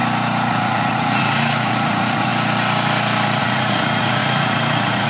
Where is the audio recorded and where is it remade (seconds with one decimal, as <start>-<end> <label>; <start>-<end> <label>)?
0.0-0.5 recorded; 0.5-2.3 remade; 2.3-3.4 recorded; 3.4-5.1 remade

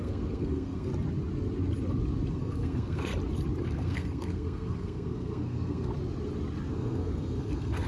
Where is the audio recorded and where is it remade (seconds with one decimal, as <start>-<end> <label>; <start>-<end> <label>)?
0.0-0.9 remade; 0.9-2.3 recorded; 2.3-3.1 remade; 3.1-3.6 recorded; 3.6-5.9 remade; 5.9-6.7 recorded; 6.7-7.9 remade

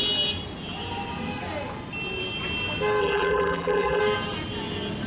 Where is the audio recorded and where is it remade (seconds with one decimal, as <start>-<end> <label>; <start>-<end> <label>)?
0.0-3.0 recorded; 3.0-4.0 remade; 4.0-5.1 recorded

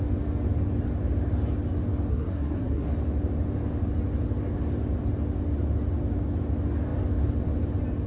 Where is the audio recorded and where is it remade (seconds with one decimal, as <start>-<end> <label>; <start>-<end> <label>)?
0.0-2.1 recorded; 2.1-2.9 remade; 2.9-8.1 recorded